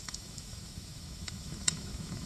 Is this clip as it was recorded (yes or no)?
no